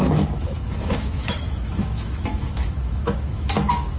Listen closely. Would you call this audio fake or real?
fake